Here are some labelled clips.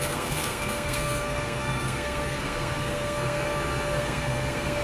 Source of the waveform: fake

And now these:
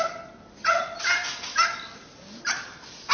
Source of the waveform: real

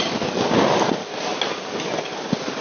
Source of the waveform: real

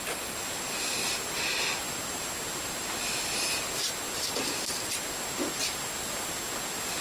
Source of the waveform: real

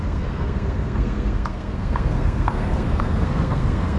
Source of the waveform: fake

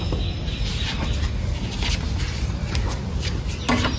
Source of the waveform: real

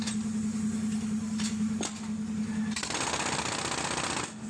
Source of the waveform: real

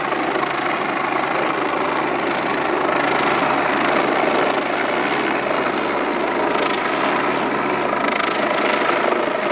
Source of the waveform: real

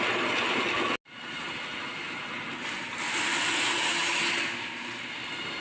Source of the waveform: real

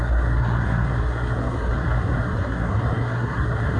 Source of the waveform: fake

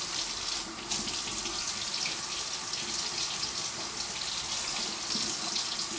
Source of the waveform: real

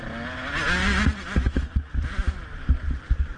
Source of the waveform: real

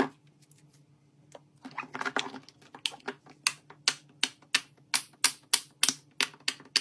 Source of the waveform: real